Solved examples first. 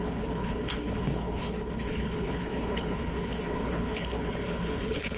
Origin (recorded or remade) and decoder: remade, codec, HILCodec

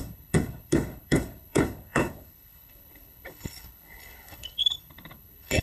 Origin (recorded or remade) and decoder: remade, codec, HILCodec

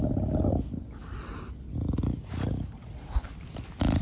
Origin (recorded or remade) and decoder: recorded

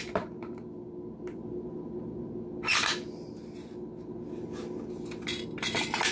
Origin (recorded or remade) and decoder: recorded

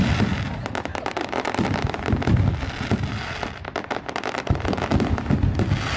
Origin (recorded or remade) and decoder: recorded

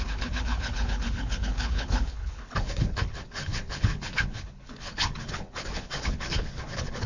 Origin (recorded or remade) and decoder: remade, codec, HILCodec